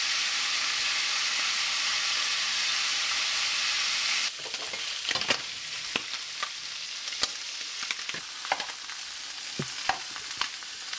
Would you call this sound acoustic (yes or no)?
yes